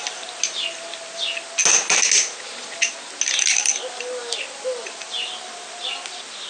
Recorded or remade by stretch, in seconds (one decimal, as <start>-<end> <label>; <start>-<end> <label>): 0.0-6.5 recorded